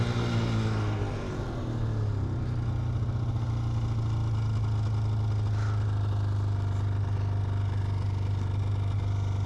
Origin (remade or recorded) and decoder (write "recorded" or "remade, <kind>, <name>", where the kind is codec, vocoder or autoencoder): recorded